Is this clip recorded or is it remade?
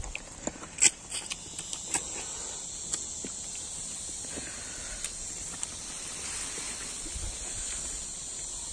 recorded